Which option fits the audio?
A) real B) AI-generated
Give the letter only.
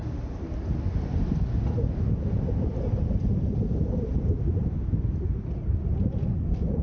A